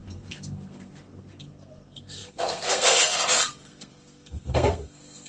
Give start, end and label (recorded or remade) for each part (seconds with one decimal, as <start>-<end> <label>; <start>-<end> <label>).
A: 0.0-5.3 remade

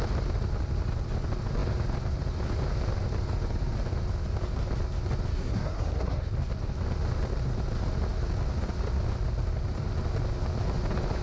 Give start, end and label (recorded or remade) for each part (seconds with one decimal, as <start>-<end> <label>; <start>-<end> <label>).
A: 0.0-5.3 recorded; 5.3-6.3 remade; 6.3-11.2 recorded

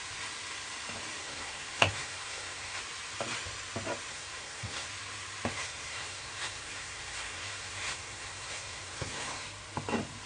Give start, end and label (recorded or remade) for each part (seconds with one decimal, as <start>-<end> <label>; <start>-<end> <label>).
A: 0.0-1.2 recorded; 1.2-2.8 remade; 2.8-4.1 recorded; 4.1-4.9 remade; 4.9-5.5 recorded; 5.5-9.4 remade; 9.4-10.3 recorded

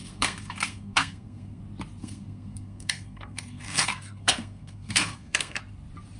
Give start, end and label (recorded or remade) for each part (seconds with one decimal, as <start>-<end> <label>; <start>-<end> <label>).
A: 0.0-1.6 remade; 1.6-2.0 recorded; 2.0-5.6 remade; 5.6-6.2 recorded

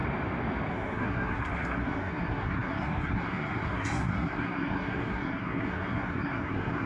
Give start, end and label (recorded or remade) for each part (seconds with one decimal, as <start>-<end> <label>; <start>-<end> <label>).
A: 0.0-0.7 recorded; 0.7-6.9 remade